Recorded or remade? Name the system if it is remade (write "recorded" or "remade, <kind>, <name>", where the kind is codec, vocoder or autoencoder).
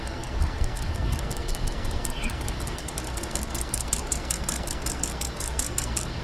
remade, codec, SNAC